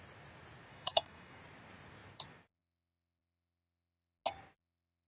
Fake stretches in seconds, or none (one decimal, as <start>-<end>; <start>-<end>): 0.7-1.4